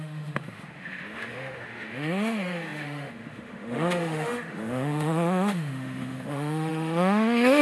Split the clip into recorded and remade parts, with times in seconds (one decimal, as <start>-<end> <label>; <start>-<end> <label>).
0.0-7.6 remade